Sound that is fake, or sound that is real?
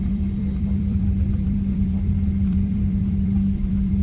fake